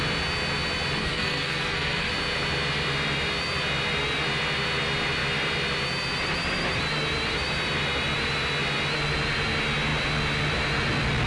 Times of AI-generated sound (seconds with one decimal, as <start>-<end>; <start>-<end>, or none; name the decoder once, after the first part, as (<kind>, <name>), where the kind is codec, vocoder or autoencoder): 1.0-2.1 (codec, SNAC)

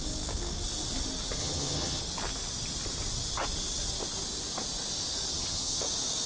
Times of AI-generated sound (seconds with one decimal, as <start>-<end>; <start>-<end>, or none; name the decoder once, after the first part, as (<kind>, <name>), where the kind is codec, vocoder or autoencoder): 1.4-2.0 (vocoder, HiFi-GAN); 5.3-5.8

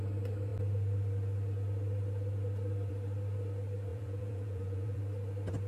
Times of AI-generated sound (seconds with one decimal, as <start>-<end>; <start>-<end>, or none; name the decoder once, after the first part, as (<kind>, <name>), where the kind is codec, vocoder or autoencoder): 3.9-5.0 (vocoder, Vocos)